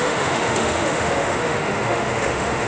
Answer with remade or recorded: remade